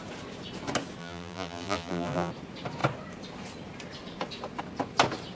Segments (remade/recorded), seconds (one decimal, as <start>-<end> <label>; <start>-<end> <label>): 0.0-1.0 recorded; 1.0-2.3 remade; 2.3-5.4 recorded